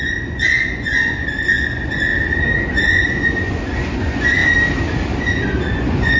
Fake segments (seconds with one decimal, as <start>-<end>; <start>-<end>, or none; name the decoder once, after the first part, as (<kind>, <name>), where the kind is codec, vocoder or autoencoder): 0.0-2.1 (vocoder, Vocos); 2.7-4.4; 5.2-6.2